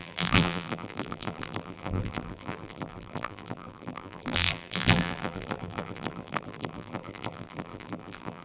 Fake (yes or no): yes